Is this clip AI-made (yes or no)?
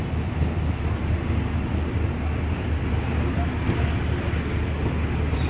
no